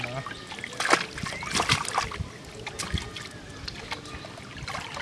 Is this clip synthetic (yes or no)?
no